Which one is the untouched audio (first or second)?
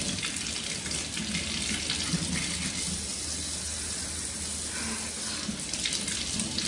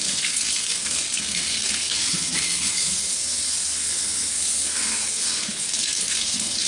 first